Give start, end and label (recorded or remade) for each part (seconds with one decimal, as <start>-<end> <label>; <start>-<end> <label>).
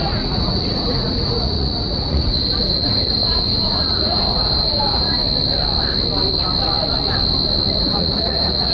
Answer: 0.0-5.2 remade; 5.2-7.8 recorded; 7.8-8.7 remade